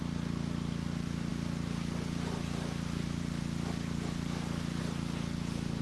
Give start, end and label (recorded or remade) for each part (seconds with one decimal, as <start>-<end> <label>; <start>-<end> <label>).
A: 0.0-5.8 recorded